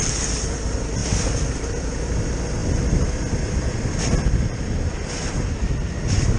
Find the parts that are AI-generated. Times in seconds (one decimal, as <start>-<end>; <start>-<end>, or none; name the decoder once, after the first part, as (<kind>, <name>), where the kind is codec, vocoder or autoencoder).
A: none